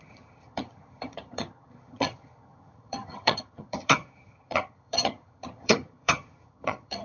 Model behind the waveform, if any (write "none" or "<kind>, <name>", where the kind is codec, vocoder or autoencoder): vocoder, HiFi-GAN